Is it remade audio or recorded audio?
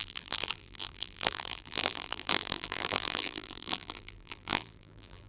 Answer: remade